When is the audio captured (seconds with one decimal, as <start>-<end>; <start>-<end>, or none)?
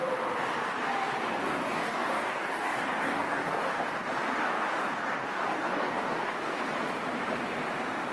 0.0-1.3; 3.8-4.4; 6.6-8.1